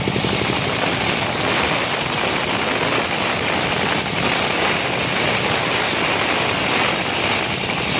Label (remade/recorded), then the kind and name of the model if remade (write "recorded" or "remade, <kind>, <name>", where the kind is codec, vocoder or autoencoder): recorded